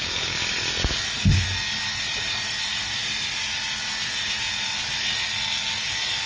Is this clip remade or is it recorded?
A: recorded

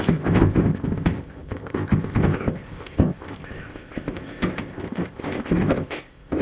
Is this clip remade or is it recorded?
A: remade